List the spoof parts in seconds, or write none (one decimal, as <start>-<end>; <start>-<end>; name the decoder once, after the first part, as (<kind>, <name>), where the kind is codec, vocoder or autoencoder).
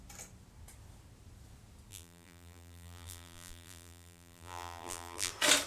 1.9-5.3 (vocoder, BigVGAN v2)